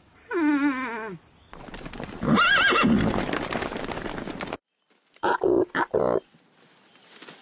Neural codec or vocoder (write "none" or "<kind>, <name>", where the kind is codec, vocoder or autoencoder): none